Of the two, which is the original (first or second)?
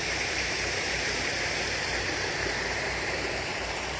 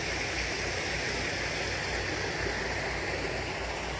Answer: second